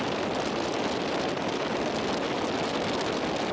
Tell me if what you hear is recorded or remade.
recorded